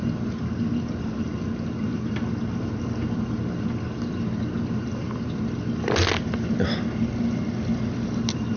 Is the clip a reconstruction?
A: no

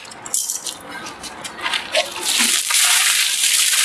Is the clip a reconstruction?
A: no